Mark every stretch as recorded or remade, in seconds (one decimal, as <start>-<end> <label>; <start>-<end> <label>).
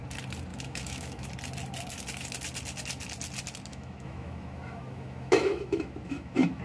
0.0-0.5 recorded; 0.5-1.3 remade; 1.3-3.7 recorded; 3.7-6.6 remade